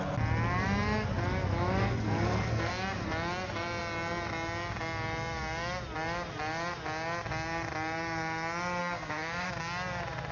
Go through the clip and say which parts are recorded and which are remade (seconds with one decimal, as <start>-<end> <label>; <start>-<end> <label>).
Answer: 0.0-1.8 recorded; 1.8-2.7 remade; 2.7-8.8 recorded; 8.8-9.5 remade; 9.5-10.3 recorded